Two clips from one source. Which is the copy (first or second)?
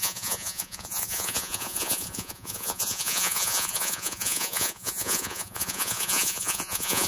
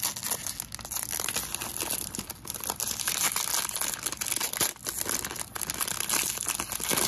first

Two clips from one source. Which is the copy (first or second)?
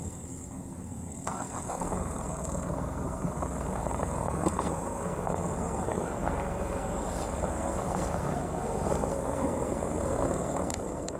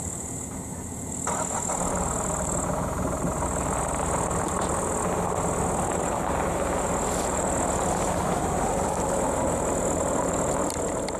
first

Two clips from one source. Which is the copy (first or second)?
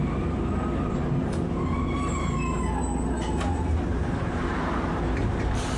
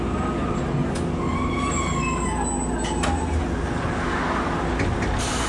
first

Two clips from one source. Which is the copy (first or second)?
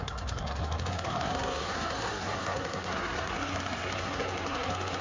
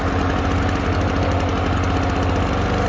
first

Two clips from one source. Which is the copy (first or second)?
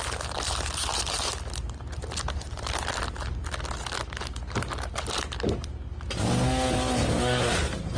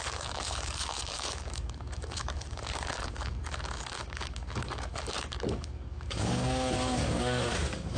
second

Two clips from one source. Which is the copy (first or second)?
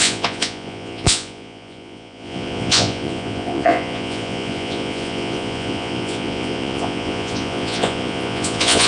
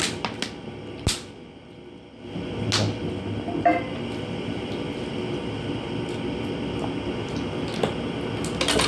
first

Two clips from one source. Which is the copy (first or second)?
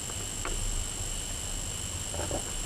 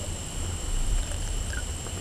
second